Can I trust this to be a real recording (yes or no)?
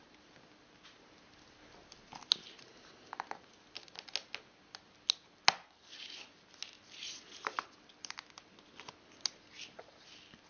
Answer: yes